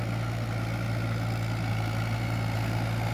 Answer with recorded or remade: recorded